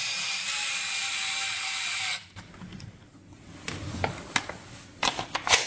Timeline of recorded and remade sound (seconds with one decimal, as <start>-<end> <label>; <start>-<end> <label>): 0.0-0.6 remade; 0.6-5.7 recorded